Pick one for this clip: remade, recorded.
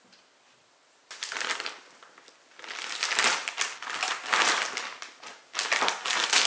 recorded